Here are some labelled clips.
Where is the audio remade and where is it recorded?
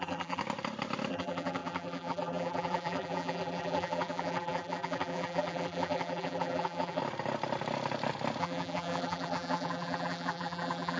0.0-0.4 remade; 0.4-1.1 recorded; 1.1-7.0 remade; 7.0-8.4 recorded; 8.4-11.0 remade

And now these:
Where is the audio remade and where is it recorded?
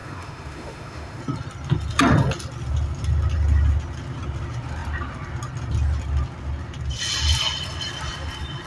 0.0-1.2 remade; 1.2-8.7 recorded